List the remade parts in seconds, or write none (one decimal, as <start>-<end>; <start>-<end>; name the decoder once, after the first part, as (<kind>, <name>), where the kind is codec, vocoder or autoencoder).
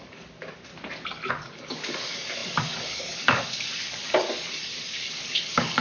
0.0-0.7 (codec, DAC); 1.3-5.8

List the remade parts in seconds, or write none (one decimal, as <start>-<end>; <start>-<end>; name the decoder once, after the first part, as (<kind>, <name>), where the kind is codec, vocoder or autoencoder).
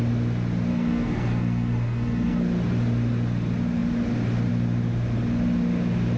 0.7-2.4 (codec, SNAC)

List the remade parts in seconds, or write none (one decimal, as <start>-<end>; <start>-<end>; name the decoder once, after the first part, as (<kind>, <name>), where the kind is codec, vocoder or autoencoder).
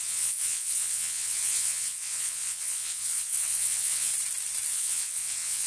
0.0-4.1 (vocoder, WaveNeXt); 4.7-5.7